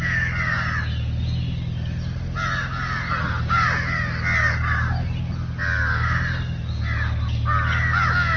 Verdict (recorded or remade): recorded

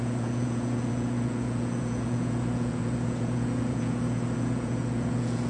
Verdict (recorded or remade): remade